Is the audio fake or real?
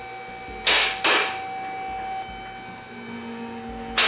real